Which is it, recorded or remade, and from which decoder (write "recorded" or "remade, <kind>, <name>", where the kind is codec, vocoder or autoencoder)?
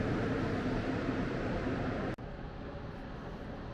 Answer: recorded